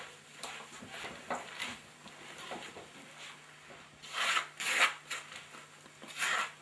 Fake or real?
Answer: real